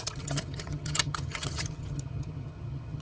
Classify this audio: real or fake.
fake